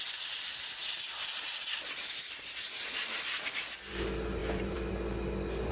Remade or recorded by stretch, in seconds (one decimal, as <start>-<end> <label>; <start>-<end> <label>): 0.0-4.4 recorded; 4.4-4.9 remade; 4.9-5.7 recorded

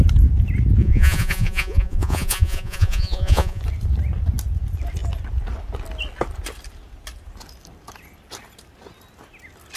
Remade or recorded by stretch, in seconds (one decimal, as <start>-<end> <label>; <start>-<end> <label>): 0.0-0.8 recorded; 0.8-3.6 remade; 3.6-9.8 recorded

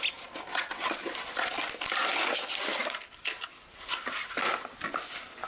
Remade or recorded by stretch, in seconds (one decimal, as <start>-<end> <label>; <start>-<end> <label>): 0.0-0.5 recorded; 0.5-1.0 remade; 1.0-5.5 recorded

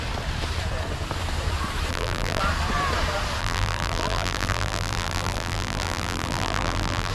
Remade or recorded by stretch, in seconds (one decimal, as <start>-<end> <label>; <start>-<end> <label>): 0.0-1.9 recorded; 1.9-2.4 remade; 2.4-3.4 recorded; 3.4-7.1 remade